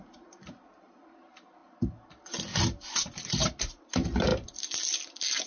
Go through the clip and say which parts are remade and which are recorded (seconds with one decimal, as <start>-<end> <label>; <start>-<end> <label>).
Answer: 0.0-5.5 recorded